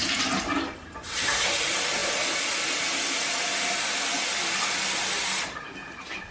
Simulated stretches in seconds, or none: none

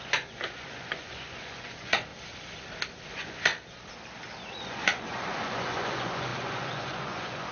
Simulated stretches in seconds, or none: 0.0-2.1 (vocoder, Vocos); 3.1-3.5; 4.6-7.5

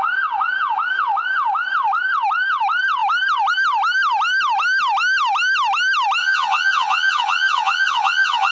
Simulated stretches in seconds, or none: 6.2-8.5 (vocoder, HiFi-GAN)